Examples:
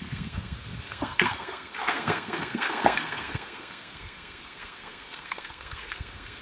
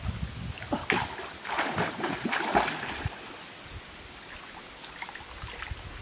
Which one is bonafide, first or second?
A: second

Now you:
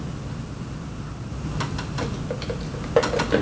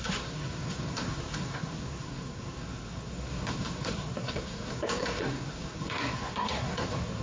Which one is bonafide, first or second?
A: first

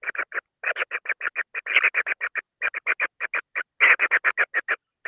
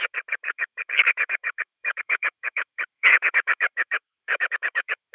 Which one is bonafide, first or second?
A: first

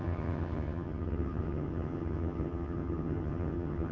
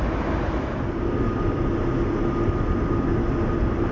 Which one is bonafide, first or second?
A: second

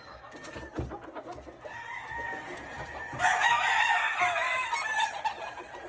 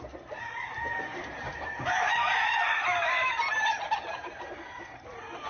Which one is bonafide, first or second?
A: first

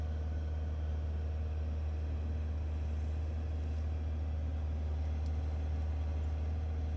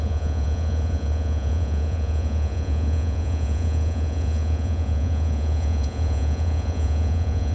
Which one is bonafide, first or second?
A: first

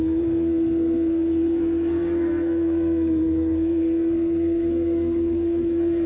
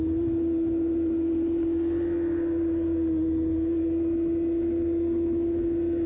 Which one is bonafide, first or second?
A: second